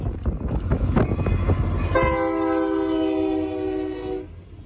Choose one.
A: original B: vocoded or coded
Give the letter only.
A